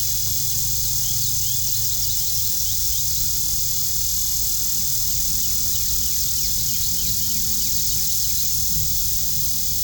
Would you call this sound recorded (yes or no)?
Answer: no